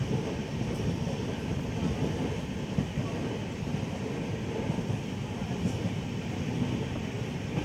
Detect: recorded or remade recorded